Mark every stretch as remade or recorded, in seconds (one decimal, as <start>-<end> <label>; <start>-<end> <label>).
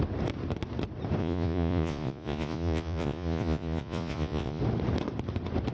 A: 0.0-1.2 recorded; 1.2-4.6 remade; 4.6-5.7 recorded